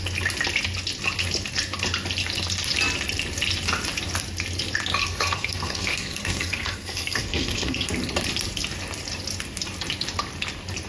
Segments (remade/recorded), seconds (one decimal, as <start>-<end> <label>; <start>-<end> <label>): 0.0-5.0 recorded; 5.0-7.9 remade; 7.9-10.9 recorded